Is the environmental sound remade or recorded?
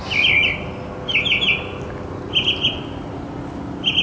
recorded